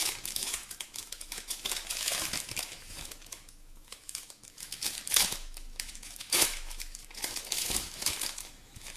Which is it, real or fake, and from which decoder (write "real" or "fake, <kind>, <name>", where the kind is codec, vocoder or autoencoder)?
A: fake, autoencoder, DAC-VAE